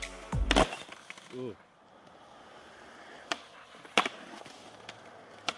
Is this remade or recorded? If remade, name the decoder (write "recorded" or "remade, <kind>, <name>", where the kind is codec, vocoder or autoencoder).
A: recorded